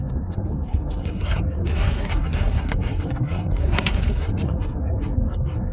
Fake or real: fake